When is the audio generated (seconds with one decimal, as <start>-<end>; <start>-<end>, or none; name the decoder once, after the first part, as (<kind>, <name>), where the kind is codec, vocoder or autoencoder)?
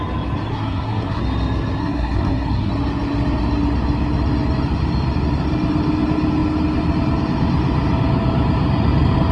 0.5-1.2 (codec, SNAC); 1.8-2.7